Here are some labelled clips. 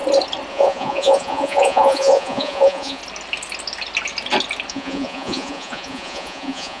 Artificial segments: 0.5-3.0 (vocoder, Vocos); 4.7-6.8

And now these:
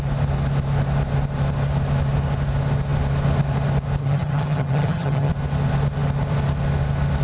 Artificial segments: 4.0-5.3 (vocoder, HiFi-GAN)

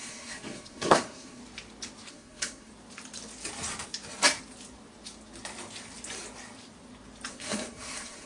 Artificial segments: 0.0-1.4 (codec, SNAC); 2.1-2.7; 7.3-8.3